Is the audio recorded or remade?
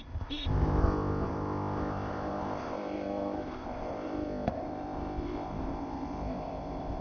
remade